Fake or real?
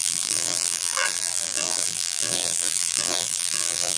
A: fake